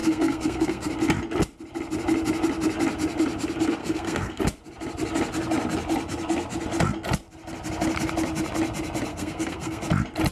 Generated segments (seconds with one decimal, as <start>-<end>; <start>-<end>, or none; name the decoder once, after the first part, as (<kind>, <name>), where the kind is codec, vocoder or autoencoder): 0.0-0.9 (codec, SNAC); 3.8-4.4; 9.1-9.8